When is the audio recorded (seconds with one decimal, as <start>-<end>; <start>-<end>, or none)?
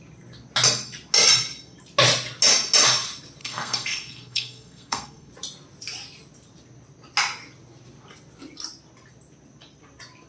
0.0-3.4; 5.3-10.3